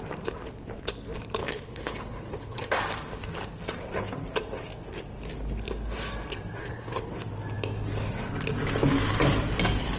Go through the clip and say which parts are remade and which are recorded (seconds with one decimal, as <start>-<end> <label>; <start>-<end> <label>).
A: 0.0-1.4 recorded; 1.4-2.8 remade; 2.8-6.6 recorded; 6.6-7.1 remade; 7.1-10.0 recorded

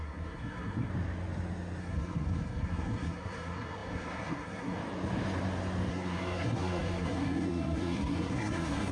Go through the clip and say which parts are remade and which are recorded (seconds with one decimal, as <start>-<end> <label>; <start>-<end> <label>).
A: 0.0-0.9 remade; 0.9-1.8 recorded; 1.8-4.8 remade; 4.8-5.9 recorded; 5.9-8.9 remade